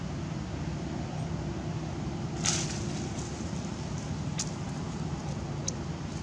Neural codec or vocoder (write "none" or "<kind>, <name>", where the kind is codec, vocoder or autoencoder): none